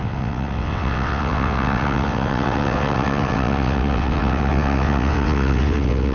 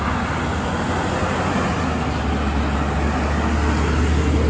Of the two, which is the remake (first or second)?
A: first